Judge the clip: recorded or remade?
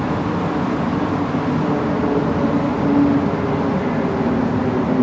recorded